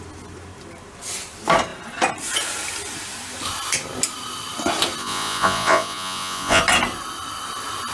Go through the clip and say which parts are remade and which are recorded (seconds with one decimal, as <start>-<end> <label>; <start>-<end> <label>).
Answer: 0.0-5.0 recorded; 5.0-6.6 remade; 6.6-7.9 recorded